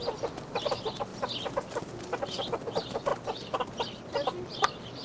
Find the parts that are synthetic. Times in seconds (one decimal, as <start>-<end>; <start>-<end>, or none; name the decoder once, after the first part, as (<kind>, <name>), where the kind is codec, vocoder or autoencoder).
none